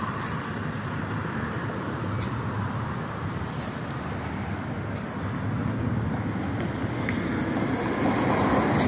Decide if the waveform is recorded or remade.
recorded